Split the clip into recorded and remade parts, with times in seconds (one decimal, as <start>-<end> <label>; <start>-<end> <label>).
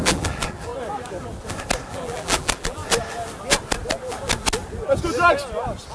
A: 0.0-0.7 remade; 0.7-1.9 recorded; 1.9-2.8 remade; 2.8-5.9 recorded